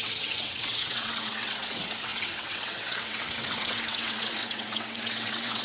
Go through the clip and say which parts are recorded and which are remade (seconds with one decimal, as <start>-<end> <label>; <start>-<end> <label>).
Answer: 0.0-5.6 remade